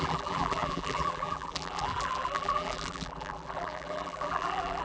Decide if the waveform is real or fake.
fake